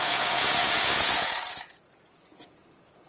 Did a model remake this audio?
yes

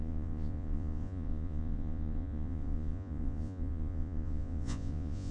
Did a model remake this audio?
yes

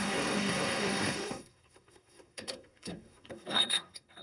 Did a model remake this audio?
yes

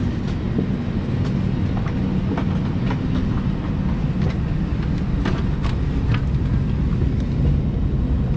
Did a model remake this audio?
no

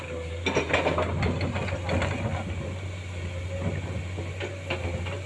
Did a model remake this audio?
no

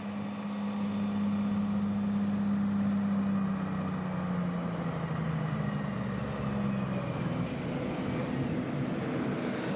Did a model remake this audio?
no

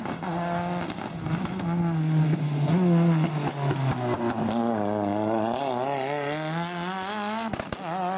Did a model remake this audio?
no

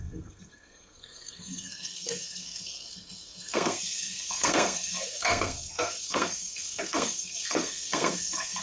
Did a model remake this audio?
yes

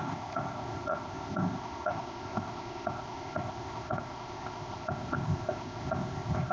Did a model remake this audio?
yes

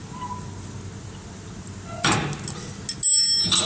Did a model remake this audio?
no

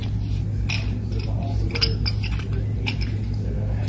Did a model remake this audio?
no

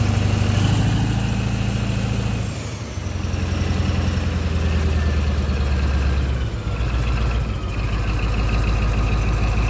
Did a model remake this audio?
no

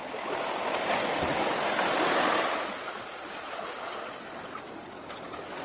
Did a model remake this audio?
no